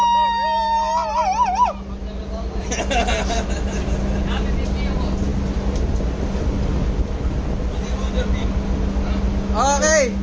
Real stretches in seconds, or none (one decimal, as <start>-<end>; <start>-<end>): 0.0-10.2